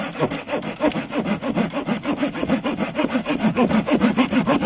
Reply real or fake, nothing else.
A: real